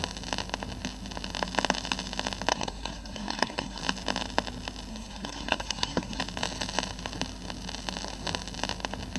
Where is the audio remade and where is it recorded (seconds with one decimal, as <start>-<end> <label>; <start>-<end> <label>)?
0.0-2.5 recorded; 2.5-3.8 remade; 3.8-4.9 recorded; 4.9-6.2 remade; 6.2-9.2 recorded